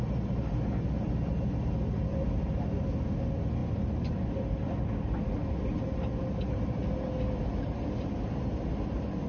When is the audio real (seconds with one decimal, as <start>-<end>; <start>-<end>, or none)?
0.0-9.3